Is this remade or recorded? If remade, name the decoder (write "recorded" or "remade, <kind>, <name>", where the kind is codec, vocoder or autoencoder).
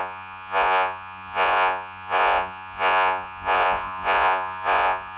remade, vocoder, Vocos